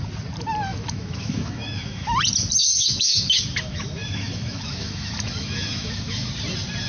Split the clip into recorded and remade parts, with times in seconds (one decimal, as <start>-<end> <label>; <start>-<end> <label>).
0.0-0.7 recorded; 0.7-2.2 remade; 2.2-2.6 recorded; 2.6-6.3 remade; 6.3-6.9 recorded